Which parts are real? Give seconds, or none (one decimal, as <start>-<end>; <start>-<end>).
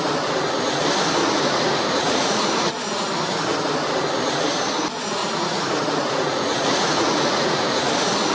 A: 0.0-1.2; 2.7-5.2; 7.9-8.3